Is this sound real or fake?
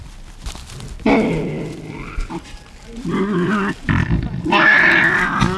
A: real